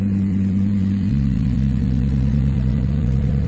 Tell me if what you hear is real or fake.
fake